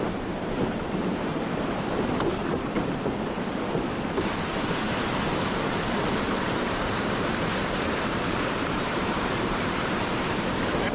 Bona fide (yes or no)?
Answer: no